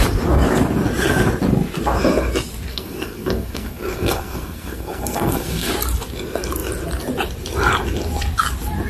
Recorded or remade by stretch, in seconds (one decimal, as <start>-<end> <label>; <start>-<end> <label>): 0.0-2.7 recorded; 2.7-5.7 remade; 5.7-8.9 recorded